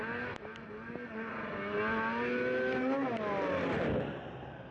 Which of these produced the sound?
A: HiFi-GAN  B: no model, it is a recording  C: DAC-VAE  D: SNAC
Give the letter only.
B